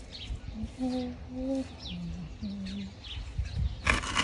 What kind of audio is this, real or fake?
real